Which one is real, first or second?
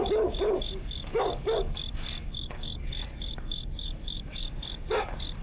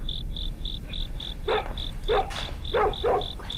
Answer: second